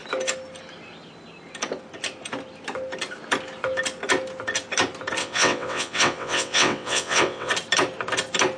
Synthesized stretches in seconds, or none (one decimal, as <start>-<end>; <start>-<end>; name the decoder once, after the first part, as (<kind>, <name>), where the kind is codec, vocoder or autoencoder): 5.2-7.5 (vocoder, WaveNeXt)